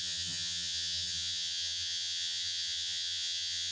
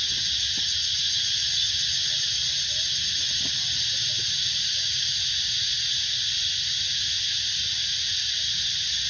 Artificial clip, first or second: first